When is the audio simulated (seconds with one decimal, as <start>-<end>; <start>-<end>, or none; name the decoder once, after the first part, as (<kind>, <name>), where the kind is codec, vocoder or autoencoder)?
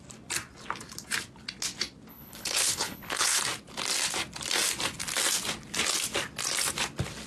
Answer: 2.1-3.4 (codec, HILCodec)